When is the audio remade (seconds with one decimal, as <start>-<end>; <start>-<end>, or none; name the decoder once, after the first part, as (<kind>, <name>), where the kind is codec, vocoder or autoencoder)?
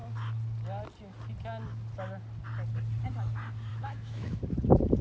3.7-4.4 (autoencoder, DAC-VAE)